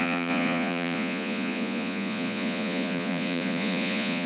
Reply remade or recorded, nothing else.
remade